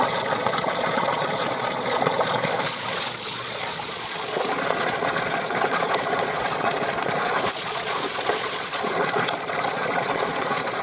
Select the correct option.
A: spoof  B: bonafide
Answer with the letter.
A